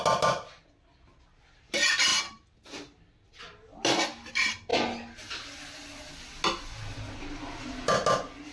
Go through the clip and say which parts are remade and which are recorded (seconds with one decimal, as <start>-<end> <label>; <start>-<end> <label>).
0.0-8.5 recorded